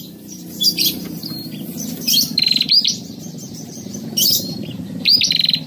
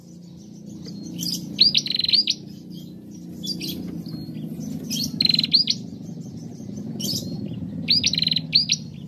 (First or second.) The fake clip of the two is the first